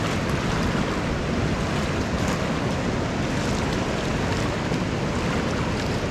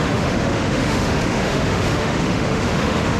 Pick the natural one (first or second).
first